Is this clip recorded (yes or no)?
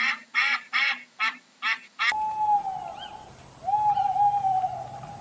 yes